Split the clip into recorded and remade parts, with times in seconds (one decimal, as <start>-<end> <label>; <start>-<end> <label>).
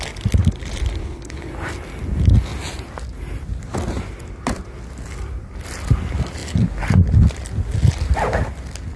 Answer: 0.0-1.0 recorded; 1.0-1.5 remade; 1.5-9.0 recorded